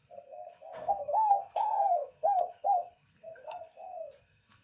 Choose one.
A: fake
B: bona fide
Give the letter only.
A